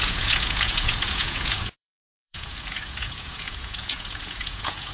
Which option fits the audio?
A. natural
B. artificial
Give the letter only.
B